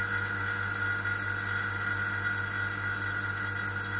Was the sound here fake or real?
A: real